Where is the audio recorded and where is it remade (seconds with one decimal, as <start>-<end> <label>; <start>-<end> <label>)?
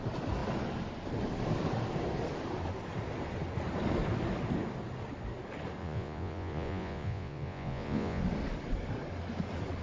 0.0-5.8 recorded; 5.8-8.2 remade; 8.2-9.8 recorded